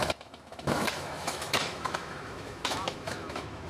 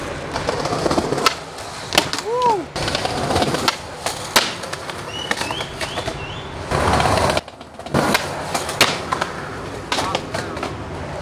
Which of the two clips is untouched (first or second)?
second